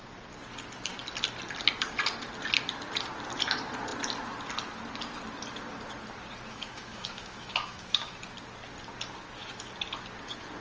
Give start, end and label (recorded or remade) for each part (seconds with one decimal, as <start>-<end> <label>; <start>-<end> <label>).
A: 0.0-6.5 recorded; 6.5-8.2 remade; 8.2-10.6 recorded